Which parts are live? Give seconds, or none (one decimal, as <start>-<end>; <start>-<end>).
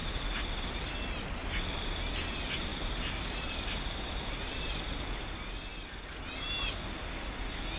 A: 0.8-1.4; 2.0-2.7; 5.1-7.8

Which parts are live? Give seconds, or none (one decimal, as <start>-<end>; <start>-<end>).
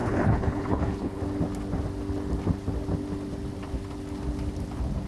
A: 1.2-5.1